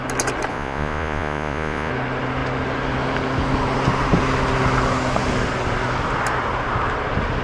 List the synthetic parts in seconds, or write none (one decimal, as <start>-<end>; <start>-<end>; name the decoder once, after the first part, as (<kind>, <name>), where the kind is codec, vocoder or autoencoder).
0.5-1.9 (vocoder, Vocos)